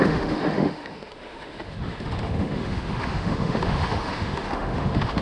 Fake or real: fake